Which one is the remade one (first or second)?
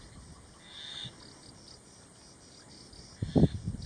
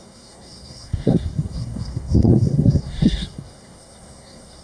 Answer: second